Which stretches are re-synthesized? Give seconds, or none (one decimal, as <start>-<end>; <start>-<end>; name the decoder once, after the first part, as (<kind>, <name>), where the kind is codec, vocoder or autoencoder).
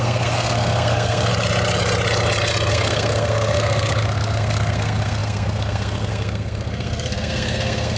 0.0-1.3 (codec, SNAC); 2.7-8.0